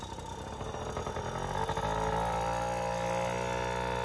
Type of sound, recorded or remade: recorded